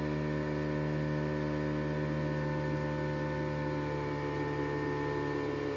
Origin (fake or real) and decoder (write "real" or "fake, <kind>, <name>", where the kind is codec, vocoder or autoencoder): real